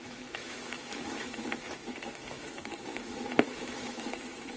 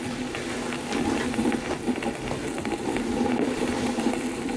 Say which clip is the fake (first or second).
first